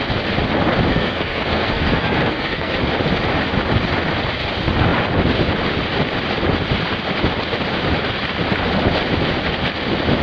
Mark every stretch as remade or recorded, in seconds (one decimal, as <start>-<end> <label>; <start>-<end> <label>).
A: 0.0-0.9 recorded; 0.9-2.7 remade; 2.7-10.2 recorded